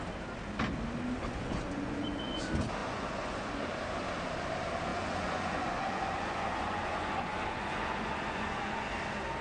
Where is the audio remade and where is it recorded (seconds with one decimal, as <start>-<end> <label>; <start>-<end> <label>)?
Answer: 0.0-1.3 recorded; 1.3-2.4 remade; 2.4-2.8 recorded; 2.8-3.6 remade; 3.6-4.9 recorded; 4.9-8.9 remade; 8.9-9.4 recorded